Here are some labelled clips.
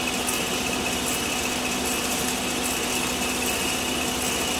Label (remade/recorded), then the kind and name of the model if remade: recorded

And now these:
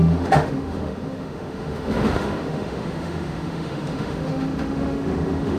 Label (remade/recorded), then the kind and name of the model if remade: remade, autoencoder, DAC-VAE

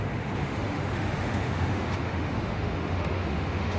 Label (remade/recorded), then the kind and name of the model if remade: remade, autoencoder, DAC-VAE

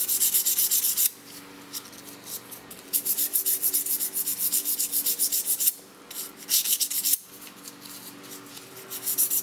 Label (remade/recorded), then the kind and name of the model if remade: recorded